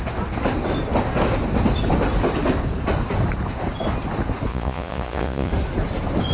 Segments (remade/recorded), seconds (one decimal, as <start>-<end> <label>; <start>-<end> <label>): 0.0-4.5 recorded; 4.5-5.5 remade; 5.5-6.3 recorded